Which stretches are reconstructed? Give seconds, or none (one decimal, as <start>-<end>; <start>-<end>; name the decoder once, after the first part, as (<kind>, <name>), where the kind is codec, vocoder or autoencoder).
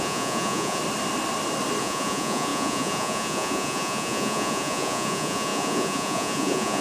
0.0-0.8 (vocoder, Vocos); 1.8-6.8